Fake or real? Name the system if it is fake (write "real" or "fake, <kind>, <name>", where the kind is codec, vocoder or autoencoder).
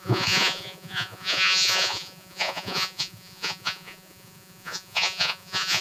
fake, vocoder, Vocos